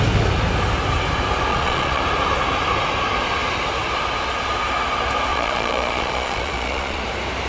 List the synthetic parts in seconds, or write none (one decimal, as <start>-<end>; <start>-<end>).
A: 1.5-2.0; 5.3-7.0